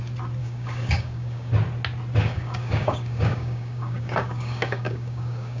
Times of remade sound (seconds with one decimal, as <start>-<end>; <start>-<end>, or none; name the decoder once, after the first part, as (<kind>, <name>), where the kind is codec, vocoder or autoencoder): 0.4-1.5 (codec, DAC); 2.2-5.6